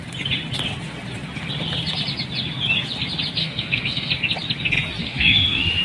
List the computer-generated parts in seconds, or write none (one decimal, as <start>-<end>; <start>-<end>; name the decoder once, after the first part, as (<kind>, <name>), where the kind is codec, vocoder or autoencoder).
3.4-4.1 (autoencoder, DAC-VAE); 5.0-5.8